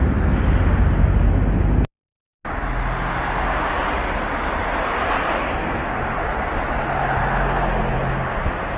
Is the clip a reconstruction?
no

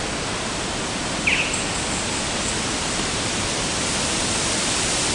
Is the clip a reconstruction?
no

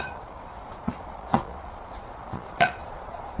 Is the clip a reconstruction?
yes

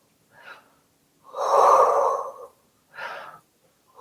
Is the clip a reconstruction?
no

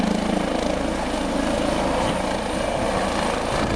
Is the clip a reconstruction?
no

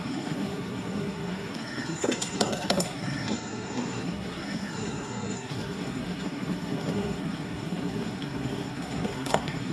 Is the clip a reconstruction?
yes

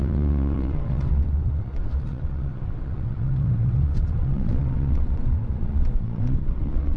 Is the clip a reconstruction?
yes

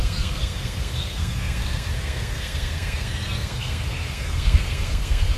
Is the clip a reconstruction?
yes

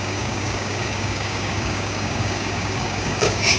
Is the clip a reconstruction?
yes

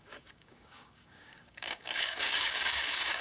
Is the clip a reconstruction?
yes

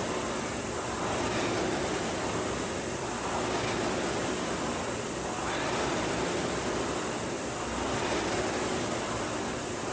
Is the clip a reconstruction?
no